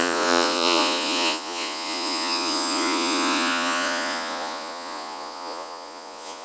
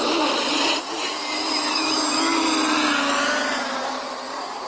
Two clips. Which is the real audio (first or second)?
second